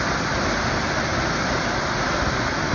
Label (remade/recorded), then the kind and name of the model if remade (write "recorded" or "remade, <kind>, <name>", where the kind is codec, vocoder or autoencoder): recorded